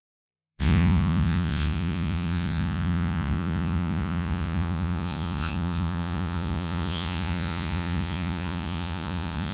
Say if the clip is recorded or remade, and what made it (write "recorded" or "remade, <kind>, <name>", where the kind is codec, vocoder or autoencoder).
remade, vocoder, Vocos